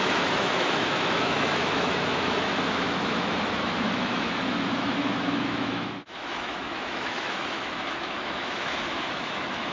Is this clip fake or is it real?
fake